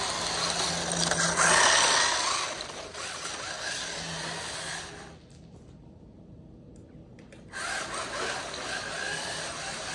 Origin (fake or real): real